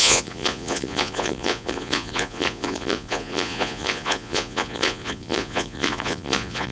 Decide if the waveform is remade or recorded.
remade